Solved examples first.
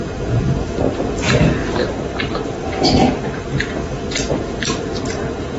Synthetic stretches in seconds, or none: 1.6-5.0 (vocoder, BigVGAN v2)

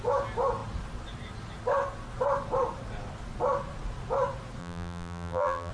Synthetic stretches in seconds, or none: 4.6-5.7 (vocoder, BigVGAN v2)

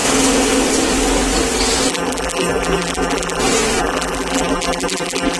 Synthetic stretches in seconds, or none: 1.9-3.4 (vocoder, BigVGAN v2); 3.8-5.4